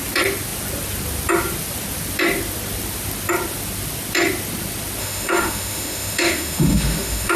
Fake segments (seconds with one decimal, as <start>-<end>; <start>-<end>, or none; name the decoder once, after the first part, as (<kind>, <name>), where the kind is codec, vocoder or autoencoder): 5.0-7.4 (autoencoder, DAC-VAE)